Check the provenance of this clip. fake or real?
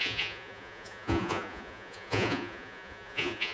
fake